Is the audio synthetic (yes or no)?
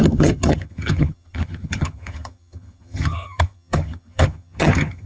yes